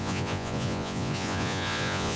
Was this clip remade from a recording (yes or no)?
yes